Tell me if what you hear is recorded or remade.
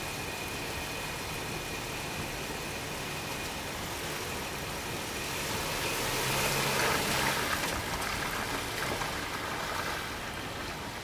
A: recorded